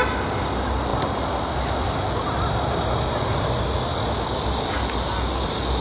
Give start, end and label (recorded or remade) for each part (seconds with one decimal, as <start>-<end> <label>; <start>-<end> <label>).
0.0-5.8 recorded